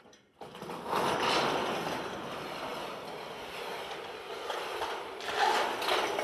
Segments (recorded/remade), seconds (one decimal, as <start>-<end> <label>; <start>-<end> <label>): 0.0-6.2 recorded